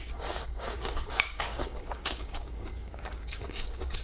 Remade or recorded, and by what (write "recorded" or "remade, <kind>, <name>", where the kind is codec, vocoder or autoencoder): remade, codec, DAC